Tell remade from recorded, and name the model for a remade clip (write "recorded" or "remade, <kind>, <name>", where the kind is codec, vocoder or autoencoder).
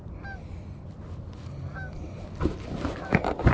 recorded